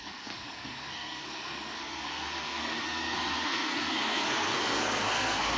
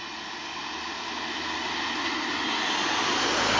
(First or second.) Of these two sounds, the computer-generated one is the first